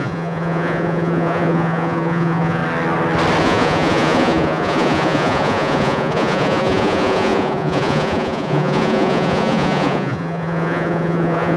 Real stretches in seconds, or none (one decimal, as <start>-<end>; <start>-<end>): 2.6-3.4